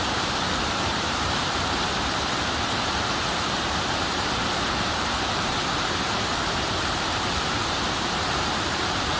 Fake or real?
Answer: fake